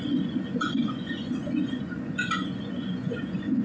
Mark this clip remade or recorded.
remade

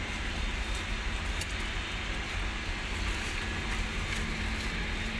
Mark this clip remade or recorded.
recorded